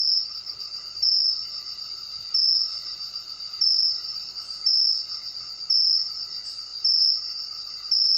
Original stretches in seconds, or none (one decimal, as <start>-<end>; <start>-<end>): 0.0-8.2